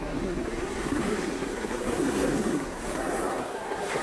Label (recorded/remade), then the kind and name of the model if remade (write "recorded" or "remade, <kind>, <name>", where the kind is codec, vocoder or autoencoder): remade, codec, SNAC